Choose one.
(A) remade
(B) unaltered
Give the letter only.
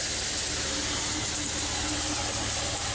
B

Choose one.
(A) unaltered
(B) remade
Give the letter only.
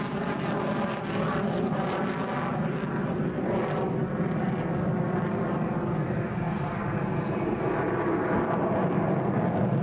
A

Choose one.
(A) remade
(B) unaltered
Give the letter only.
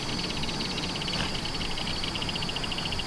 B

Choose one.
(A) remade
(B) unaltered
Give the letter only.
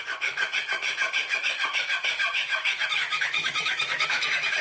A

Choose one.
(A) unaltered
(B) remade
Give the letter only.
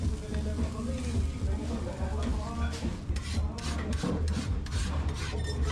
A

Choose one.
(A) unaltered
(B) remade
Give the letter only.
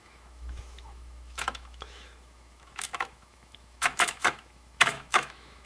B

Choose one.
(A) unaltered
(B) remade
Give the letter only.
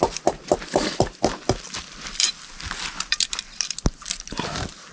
B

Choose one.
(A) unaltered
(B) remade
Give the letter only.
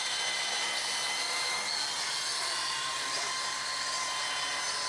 A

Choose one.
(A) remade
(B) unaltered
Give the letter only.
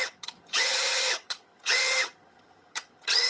A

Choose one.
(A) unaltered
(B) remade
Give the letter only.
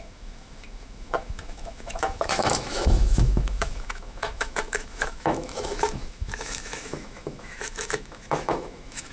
B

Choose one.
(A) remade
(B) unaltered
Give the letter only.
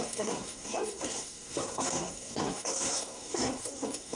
A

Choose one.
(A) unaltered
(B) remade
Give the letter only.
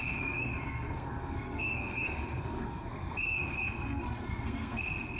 B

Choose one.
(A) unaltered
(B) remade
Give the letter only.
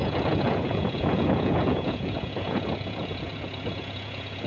B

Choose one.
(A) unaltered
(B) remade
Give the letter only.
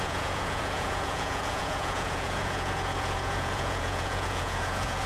B